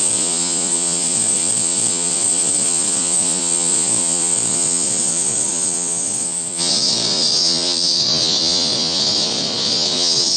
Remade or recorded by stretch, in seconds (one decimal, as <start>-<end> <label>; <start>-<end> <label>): 0.0-10.4 remade